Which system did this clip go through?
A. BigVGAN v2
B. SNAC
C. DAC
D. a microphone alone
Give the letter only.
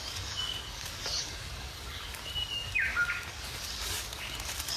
C